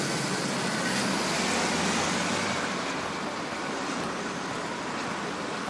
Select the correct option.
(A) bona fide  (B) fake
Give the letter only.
A